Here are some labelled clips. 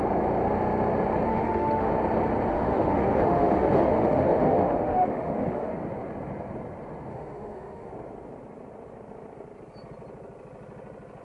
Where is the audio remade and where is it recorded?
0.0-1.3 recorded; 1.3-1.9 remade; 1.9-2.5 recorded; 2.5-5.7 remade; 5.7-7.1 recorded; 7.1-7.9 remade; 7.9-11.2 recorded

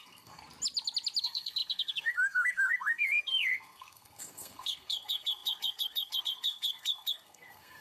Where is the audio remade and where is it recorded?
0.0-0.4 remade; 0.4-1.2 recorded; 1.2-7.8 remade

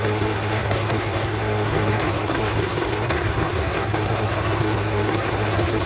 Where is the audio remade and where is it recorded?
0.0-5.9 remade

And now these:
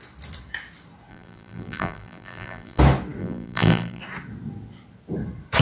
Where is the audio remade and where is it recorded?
0.0-1.1 recorded; 1.1-2.8 remade; 2.8-3.2 recorded; 3.2-4.0 remade; 4.0-5.6 recorded

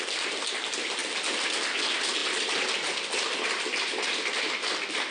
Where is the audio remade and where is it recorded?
0.0-5.1 recorded

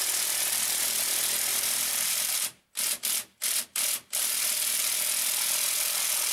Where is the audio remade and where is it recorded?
0.0-1.5 recorded; 1.5-2.7 remade; 2.7-6.3 recorded